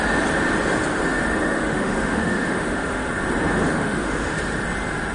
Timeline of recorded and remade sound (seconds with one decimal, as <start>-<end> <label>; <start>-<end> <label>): 0.0-1.4 recorded; 1.4-3.1 remade; 3.1-3.6 recorded; 3.6-4.4 remade; 4.4-5.1 recorded